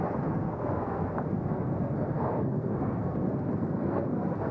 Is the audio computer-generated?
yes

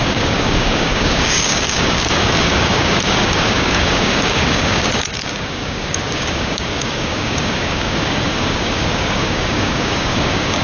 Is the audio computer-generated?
yes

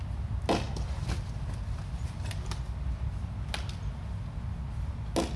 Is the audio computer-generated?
no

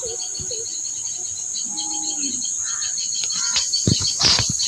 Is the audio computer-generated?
no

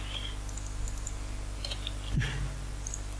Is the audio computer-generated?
no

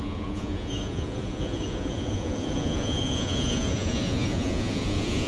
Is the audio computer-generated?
yes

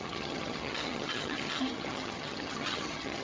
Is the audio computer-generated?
yes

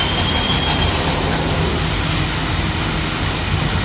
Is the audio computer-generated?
no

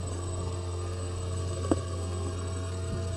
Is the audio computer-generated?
yes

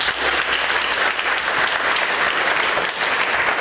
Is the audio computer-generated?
no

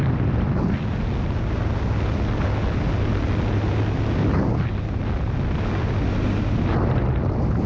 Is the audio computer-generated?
no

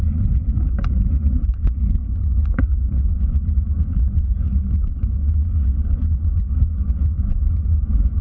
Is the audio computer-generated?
yes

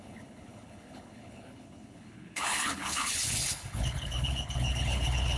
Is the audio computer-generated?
yes